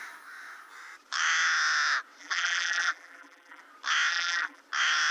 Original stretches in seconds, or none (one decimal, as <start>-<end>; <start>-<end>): 0.0-2.2; 3.6-4.1; 4.6-5.1